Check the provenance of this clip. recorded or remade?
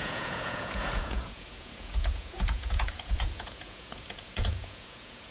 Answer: remade